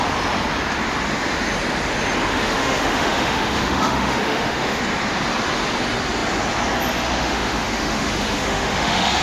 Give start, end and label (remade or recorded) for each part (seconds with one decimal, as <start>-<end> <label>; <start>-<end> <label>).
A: 0.0-2.3 recorded; 2.3-4.8 remade; 4.8-7.2 recorded; 7.2-9.2 remade